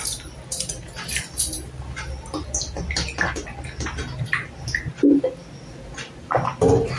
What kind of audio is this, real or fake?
real